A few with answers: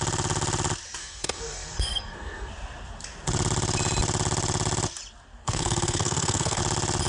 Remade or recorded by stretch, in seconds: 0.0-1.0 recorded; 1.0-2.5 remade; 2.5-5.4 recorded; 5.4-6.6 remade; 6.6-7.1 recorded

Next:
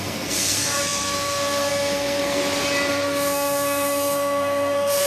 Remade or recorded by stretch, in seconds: 0.0-2.4 remade; 2.4-2.9 recorded; 2.9-5.1 remade